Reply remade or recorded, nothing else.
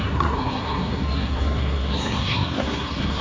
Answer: remade